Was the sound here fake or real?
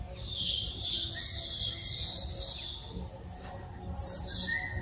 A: real